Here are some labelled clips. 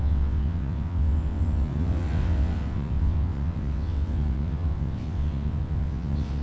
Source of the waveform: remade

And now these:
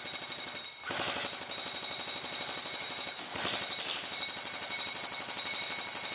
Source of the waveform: recorded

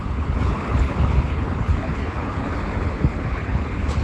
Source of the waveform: remade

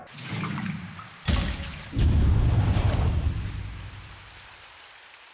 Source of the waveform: recorded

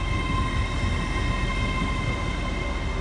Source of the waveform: recorded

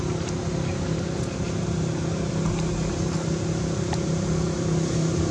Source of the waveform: recorded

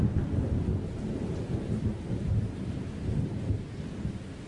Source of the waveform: recorded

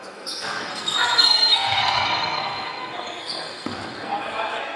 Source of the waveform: remade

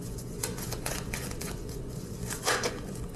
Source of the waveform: remade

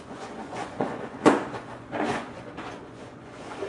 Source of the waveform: remade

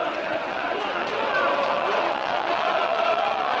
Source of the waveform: remade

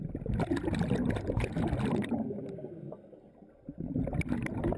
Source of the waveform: recorded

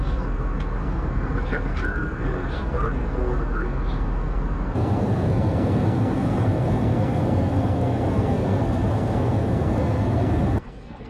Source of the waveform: remade